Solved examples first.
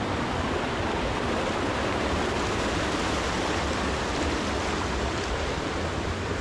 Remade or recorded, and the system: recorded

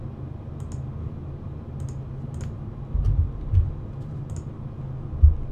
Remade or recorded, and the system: recorded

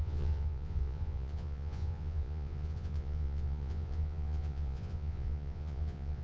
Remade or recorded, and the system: remade, vocoder, Vocos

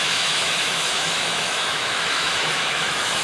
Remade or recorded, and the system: remade, autoencoder, DAC-VAE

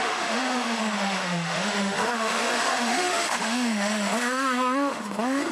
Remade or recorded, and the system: remade, autoencoder, DAC-VAE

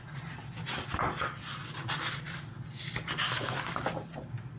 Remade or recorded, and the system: recorded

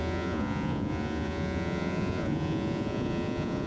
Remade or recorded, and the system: remade, vocoder, Vocos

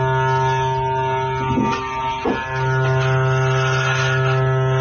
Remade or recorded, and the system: recorded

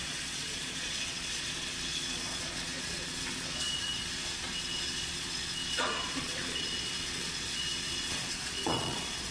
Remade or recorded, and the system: remade, vocoder, Vocos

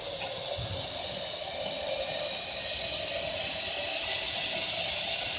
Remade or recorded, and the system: recorded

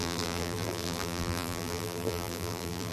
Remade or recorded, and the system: remade, vocoder, BigVGAN v2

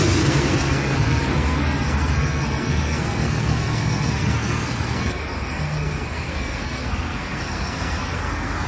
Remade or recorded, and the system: remade, codec, SNAC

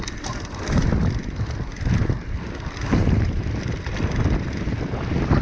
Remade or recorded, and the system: recorded